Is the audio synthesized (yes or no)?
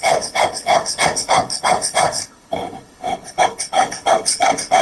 yes